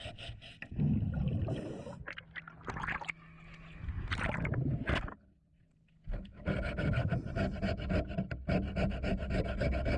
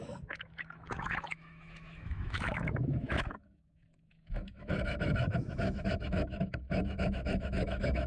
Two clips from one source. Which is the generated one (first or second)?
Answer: second